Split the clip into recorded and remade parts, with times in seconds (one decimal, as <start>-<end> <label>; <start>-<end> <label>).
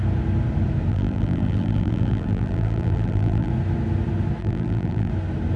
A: 0.0-0.9 recorded; 0.9-3.5 remade; 3.5-4.4 recorded; 4.4-5.1 remade; 5.1-5.6 recorded